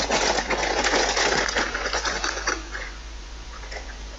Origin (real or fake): fake